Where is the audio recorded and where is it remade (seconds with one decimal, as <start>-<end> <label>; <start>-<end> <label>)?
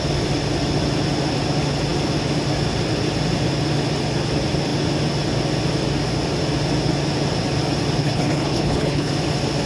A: 0.0-8.0 recorded; 8.0-9.1 remade; 9.1-9.7 recorded